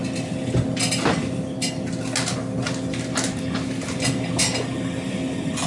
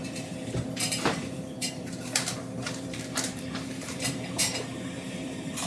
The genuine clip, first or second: first